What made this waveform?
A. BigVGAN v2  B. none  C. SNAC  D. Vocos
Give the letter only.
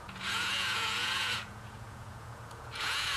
D